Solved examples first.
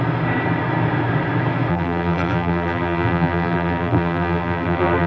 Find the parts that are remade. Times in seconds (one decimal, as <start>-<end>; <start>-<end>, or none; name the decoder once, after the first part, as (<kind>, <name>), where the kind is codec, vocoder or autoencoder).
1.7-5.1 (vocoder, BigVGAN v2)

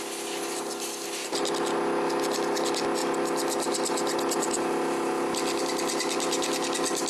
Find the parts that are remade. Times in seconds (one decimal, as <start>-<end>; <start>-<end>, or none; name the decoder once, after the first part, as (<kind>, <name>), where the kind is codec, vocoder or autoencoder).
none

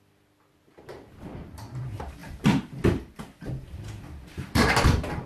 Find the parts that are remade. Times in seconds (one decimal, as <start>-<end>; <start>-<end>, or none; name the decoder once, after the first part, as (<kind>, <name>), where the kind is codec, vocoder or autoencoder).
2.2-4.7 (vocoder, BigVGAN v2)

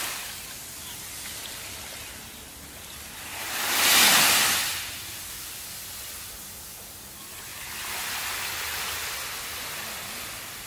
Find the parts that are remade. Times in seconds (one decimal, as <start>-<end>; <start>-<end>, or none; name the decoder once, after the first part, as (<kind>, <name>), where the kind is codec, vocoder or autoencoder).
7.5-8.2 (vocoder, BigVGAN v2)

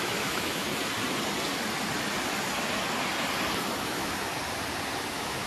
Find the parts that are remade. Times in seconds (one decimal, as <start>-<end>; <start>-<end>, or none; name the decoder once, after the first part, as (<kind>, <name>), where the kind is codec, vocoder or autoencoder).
0.0-0.7 (autoencoder, DAC-VAE); 3.8-4.3; 5.1-5.5

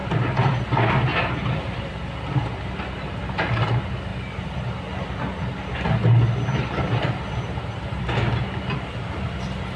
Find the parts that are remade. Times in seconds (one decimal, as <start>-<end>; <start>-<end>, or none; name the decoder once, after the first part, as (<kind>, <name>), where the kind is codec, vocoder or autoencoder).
0.0-0.6 (vocoder, BigVGAN v2); 1.1-1.9

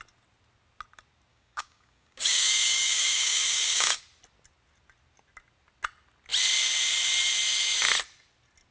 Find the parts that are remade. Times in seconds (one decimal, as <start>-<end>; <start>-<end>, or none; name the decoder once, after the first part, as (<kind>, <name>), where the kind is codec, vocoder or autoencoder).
1.3-4.0 (codec, DAC)